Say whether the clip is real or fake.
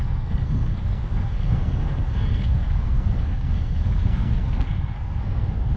fake